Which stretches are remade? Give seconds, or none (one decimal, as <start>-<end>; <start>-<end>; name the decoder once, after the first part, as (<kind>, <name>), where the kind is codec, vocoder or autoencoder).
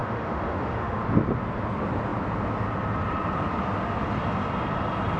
0.0-1.0 (autoencoder, DAC-VAE)